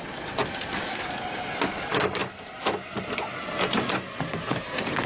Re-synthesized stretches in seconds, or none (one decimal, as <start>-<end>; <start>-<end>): none